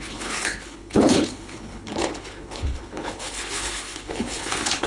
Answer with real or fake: fake